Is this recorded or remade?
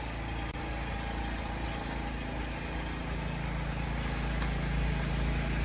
recorded